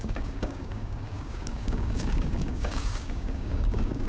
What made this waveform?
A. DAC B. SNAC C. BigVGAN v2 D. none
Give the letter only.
A